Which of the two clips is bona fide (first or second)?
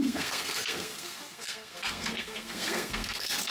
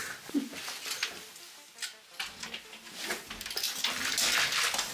second